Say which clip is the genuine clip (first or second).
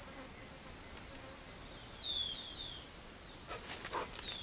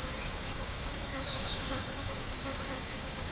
first